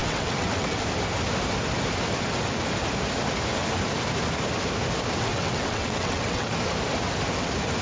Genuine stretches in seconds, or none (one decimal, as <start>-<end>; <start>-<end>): 0.8-5.3; 6.5-7.8